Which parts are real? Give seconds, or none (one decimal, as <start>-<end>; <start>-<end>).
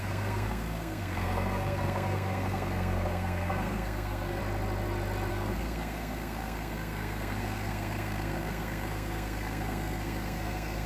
4.4-5.3